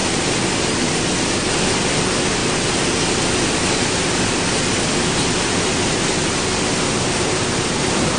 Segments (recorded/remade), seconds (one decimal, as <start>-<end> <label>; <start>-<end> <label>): 0.0-1.1 recorded; 1.1-2.4 remade; 2.4-7.1 recorded; 7.1-8.2 remade

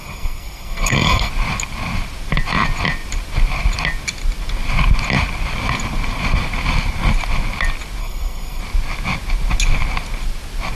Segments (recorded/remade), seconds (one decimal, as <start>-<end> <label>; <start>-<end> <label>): 0.0-1.3 remade; 1.3-8.0 recorded; 8.0-8.6 remade; 8.6-10.7 recorded

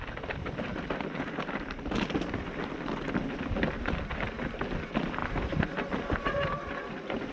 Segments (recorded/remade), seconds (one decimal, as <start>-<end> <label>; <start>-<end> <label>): 0.0-7.3 recorded

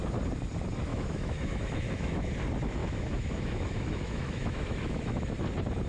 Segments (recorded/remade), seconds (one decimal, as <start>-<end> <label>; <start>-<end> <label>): 0.0-0.9 recorded; 0.9-2.3 remade; 2.3-2.8 recorded; 2.8-5.2 remade; 5.2-5.9 recorded

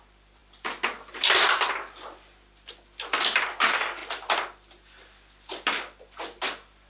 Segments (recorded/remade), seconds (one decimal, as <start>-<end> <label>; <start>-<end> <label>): 0.0-6.9 recorded